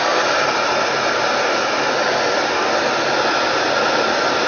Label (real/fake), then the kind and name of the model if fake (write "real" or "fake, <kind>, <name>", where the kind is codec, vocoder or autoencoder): real